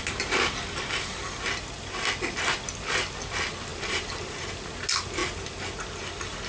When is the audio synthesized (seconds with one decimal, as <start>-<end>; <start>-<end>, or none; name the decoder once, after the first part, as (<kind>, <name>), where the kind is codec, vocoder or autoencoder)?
3.7-4.5 (vocoder, BigVGAN v2)